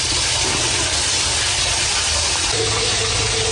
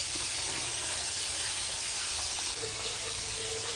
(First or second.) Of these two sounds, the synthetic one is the second